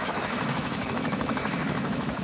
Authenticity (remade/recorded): remade